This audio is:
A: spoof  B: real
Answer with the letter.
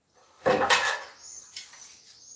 B